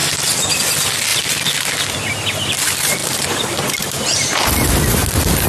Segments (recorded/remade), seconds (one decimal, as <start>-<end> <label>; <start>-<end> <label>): 0.0-1.1 recorded; 1.1-1.7 remade; 1.7-3.0 recorded; 3.0-4.8 remade; 4.8-5.5 recorded

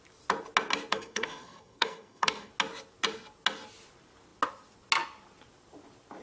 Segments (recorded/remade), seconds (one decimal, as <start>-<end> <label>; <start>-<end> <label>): 0.0-0.9 recorded; 0.9-2.5 remade; 2.5-6.2 recorded

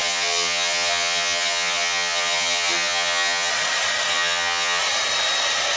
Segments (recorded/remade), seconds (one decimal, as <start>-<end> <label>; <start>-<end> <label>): 0.0-3.5 remade; 3.5-4.1 recorded; 4.1-4.8 remade; 4.8-5.8 recorded